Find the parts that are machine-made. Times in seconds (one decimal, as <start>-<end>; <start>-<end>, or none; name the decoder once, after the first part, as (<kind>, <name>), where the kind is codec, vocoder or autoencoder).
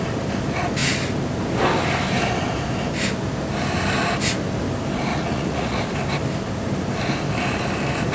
5.1-5.8 (vocoder, Vocos)